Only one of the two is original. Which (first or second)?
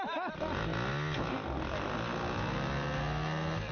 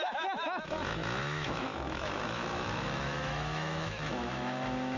first